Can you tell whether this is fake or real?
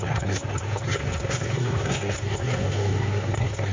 fake